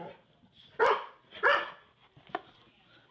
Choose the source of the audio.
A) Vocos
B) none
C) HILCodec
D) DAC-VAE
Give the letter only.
B